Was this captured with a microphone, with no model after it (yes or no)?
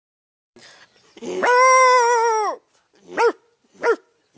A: yes